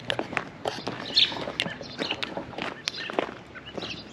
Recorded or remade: recorded